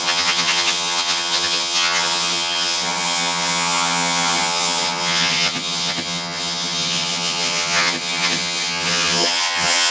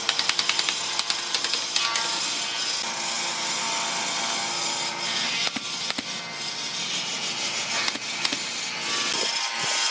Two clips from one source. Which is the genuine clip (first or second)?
second